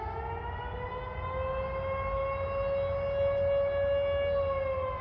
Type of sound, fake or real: real